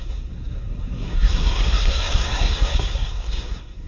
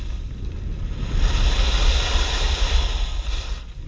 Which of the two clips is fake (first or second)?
first